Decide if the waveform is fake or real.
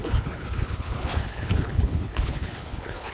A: fake